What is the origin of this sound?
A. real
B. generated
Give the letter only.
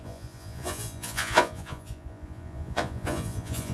B